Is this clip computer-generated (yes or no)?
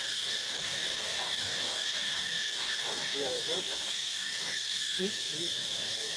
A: yes